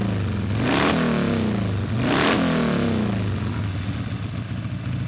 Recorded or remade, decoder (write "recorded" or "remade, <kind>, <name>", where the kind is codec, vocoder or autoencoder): recorded